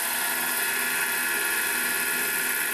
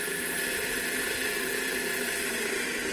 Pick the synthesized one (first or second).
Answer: second